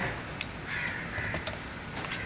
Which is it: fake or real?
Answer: real